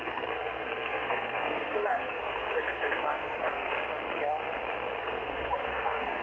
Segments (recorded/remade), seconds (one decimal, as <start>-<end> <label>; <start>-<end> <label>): 0.0-3.8 remade; 3.8-5.0 recorded; 5.0-6.2 remade